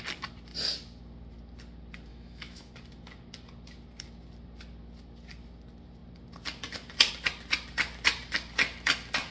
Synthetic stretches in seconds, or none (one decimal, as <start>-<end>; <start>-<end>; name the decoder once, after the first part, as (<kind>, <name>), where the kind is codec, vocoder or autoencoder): 2.1-2.7 (autoencoder, DAC-VAE)